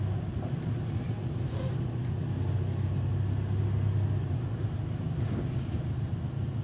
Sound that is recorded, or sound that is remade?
recorded